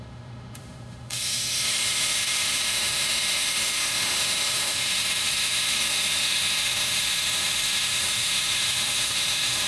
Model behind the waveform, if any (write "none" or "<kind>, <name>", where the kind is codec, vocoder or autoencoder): autoencoder, DAC-VAE